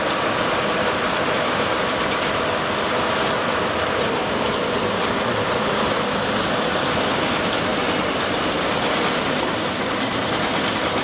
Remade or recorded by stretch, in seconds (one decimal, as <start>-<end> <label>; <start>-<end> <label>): 0.0-0.8 remade; 0.8-1.4 recorded; 1.4-7.7 remade; 7.7-8.5 recorded; 8.5-11.0 remade

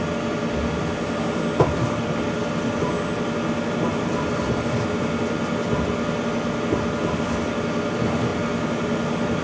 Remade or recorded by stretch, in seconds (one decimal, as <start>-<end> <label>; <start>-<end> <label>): 0.0-9.4 recorded

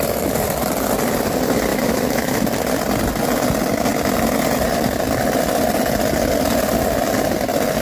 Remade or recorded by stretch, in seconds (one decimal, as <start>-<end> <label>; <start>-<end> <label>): 0.0-1.7 recorded; 1.7-2.4 remade; 2.4-7.8 recorded

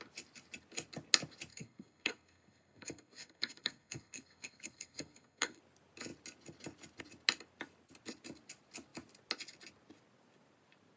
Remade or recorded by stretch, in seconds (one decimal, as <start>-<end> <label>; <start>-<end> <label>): 0.0-1.5 recorded; 1.5-5.6 remade; 5.6-11.0 recorded

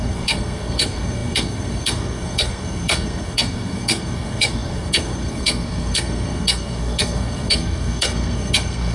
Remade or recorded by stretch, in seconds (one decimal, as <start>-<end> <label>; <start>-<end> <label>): 0.0-8.9 remade

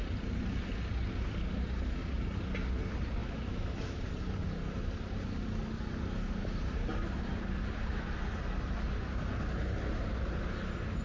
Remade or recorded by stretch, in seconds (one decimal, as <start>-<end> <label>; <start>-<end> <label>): 0.0-3.2 recorded; 3.2-4.0 remade; 4.0-11.0 recorded

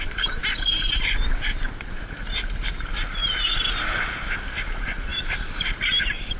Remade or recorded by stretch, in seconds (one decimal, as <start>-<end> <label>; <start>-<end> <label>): 0.0-0.4 remade; 0.4-2.6 recorded; 2.6-3.2 remade; 3.2-4.1 recorded; 4.1-6.4 remade